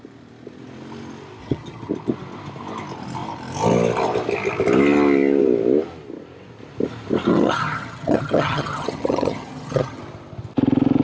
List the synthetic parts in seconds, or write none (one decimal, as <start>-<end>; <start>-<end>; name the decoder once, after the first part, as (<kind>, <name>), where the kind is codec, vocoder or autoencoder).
1.4-1.9 (vocoder, HiFi-GAN); 7.3-10.0